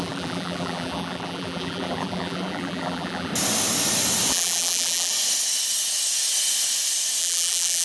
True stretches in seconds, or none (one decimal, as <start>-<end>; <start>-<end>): 3.3-4.3; 5.1-7.2